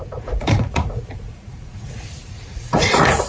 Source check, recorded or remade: remade